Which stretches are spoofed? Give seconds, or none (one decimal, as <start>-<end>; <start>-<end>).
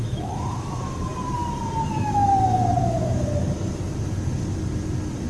0.0-1.1; 1.9-2.3; 2.8-3.4